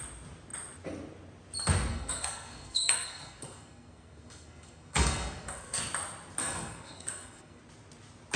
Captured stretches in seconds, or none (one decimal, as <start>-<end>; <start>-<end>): 0.0-1.9; 5.8-6.4; 7.6-8.4